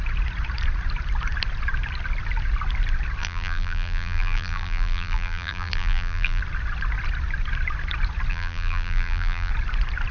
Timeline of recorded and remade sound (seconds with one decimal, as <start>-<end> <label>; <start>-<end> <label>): 0.0-3.2 recorded; 3.2-6.4 remade; 6.4-8.3 recorded; 8.3-9.5 remade; 9.5-10.1 recorded